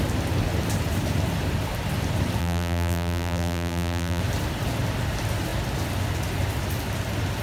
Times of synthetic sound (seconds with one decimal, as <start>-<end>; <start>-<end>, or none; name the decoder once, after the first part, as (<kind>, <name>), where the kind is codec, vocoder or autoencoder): 2.4-4.2 (vocoder, BigVGAN v2)